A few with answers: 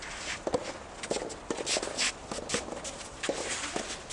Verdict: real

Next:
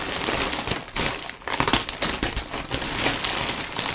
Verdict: real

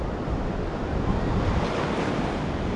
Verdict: real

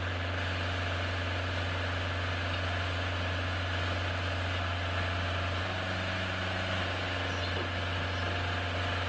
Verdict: real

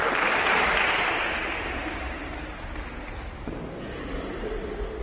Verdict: real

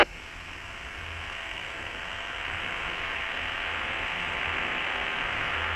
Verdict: fake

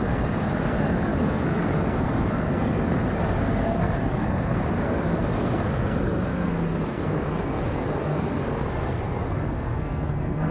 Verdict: fake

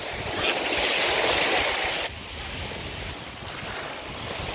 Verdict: real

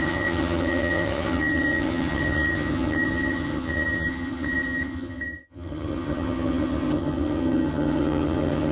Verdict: fake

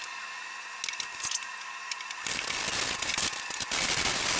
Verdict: real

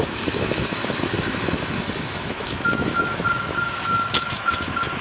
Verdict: fake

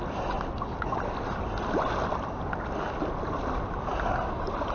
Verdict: real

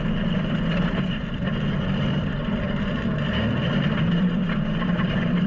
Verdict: fake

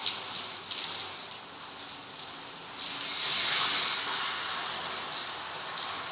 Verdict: real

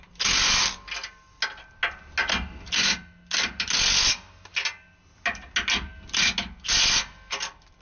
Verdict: real